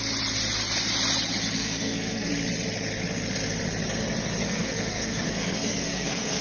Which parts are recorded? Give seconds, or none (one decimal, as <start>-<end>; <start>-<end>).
0.0-1.6; 2.3-4.4